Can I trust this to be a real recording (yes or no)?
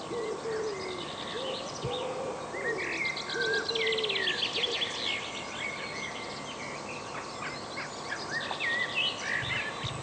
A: yes